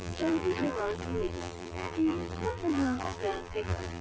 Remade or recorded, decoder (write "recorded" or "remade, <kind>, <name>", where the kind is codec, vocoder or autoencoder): remade, vocoder, BigVGAN v2